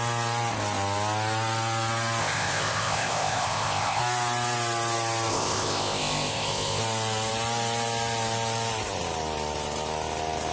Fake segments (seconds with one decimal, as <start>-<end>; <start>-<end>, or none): 2.2-4.0; 5.3-6.8